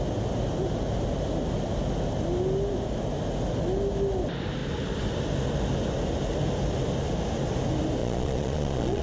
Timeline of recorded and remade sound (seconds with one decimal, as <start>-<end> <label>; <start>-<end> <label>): 0.0-8.0 recorded; 8.0-9.0 remade